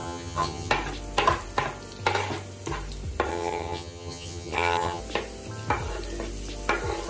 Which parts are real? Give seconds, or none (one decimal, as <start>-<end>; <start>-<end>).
0.7-3.3; 5.0-7.1